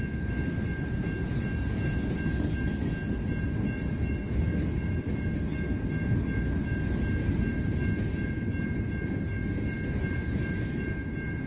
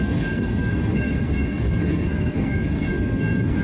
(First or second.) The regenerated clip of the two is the second